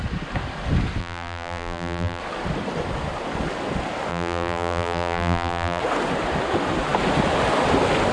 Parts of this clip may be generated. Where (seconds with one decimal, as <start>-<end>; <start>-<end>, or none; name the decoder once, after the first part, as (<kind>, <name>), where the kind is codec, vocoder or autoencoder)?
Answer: 1.0-2.2 (vocoder, BigVGAN v2); 4.1-5.8